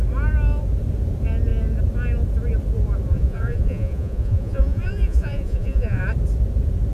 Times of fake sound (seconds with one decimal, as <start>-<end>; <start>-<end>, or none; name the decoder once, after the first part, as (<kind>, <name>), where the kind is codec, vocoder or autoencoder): 3.1-6.0 (vocoder, Vocos)